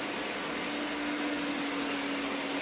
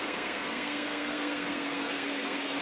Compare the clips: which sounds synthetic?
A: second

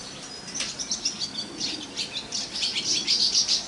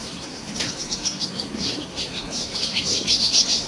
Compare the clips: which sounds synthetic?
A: second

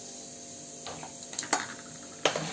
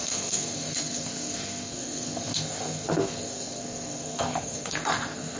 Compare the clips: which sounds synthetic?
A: second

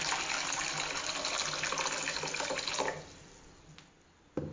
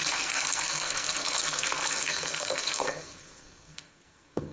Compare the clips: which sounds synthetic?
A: second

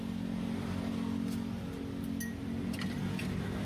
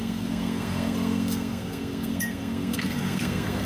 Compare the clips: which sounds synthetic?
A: second